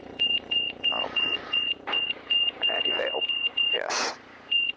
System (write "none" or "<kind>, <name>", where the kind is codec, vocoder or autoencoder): vocoder, Vocos